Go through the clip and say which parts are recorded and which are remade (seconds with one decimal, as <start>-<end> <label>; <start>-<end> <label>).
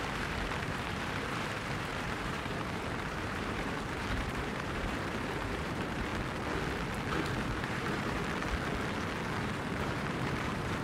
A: 0.0-6.1 remade; 6.1-7.4 recorded; 7.4-8.2 remade; 8.2-9.4 recorded; 9.4-10.8 remade